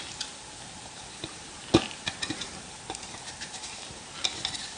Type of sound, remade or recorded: recorded